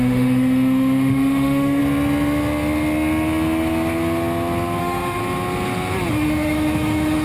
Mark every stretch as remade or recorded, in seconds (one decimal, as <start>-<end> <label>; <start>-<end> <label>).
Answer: 0.0-1.8 remade; 1.8-4.8 recorded; 4.8-5.2 remade; 5.2-6.1 recorded; 6.1-7.2 remade